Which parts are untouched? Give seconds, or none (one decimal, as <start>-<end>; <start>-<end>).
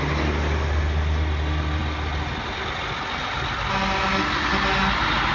0.0-5.3